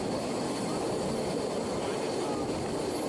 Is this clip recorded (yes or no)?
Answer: yes